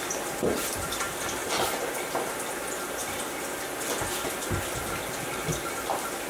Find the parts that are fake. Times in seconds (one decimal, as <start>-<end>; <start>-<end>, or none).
0.0-1.4; 2.5-3.0